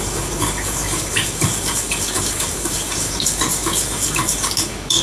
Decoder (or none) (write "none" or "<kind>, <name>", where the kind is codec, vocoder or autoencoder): codec, DAC